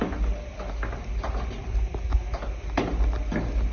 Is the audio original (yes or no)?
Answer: yes